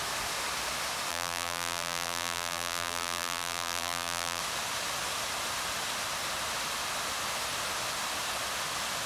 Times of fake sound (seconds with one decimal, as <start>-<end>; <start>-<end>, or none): 1.1-4.4